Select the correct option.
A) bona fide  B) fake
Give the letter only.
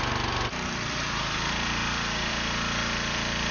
B